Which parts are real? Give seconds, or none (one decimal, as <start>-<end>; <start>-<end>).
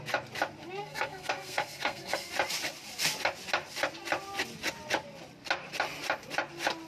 0.0-0.8; 2.3-6.9